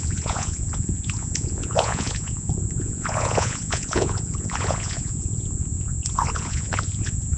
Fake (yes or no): yes